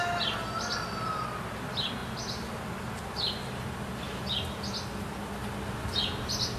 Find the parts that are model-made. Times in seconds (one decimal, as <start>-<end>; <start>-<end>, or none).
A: none